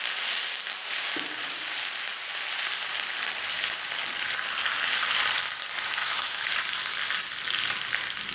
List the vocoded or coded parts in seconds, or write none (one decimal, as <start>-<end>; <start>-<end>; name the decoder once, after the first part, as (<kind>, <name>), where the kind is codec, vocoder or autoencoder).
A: 6.0-6.5 (autoencoder, DAC-VAE)